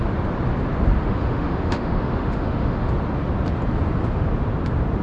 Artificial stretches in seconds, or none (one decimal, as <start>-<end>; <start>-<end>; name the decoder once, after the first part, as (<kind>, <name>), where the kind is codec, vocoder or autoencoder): 1.0-2.9 (autoencoder, DAC-VAE)